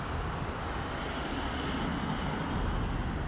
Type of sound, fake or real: real